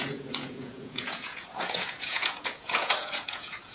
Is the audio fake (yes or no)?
yes